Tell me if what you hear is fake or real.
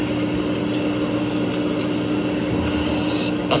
real